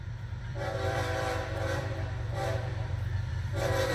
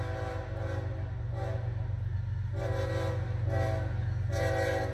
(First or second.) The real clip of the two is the second